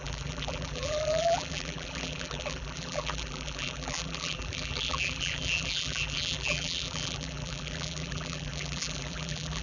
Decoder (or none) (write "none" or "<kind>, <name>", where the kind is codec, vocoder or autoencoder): vocoder, BigVGAN v2